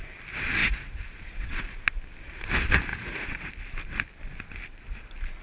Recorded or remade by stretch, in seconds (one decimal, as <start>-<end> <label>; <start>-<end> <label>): 0.0-0.6 recorded; 0.6-1.6 remade; 1.6-2.9 recorded; 2.9-3.5 remade; 3.5-5.4 recorded

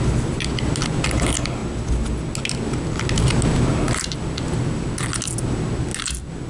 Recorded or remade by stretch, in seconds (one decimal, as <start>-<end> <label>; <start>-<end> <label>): 0.0-6.5 recorded

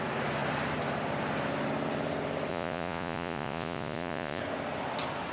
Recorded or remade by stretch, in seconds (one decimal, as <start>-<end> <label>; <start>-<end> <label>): 0.0-2.5 recorded; 2.5-4.4 remade; 4.4-5.3 recorded